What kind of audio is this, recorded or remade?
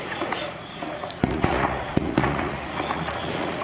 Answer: remade